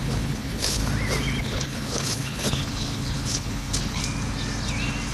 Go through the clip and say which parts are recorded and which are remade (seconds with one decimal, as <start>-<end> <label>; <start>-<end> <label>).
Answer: 0.0-0.8 remade; 0.8-1.4 recorded; 1.4-4.0 remade; 4.0-5.1 recorded